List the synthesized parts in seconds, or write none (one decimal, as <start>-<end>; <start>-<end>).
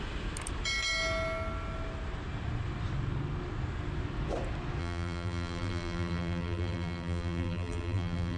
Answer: 4.8-8.4